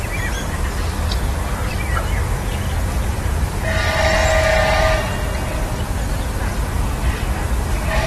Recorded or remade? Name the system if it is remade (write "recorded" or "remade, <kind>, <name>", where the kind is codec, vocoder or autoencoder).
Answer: recorded